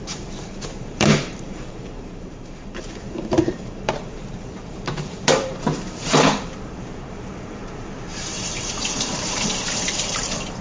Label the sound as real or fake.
fake